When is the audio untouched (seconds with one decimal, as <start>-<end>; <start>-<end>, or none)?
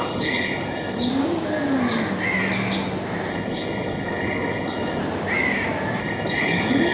1.1-3.3; 5.0-6.0